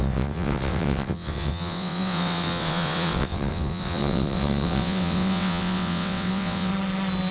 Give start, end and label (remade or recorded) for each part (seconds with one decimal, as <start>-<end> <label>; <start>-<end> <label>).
0.0-6.7 remade; 6.7-7.3 recorded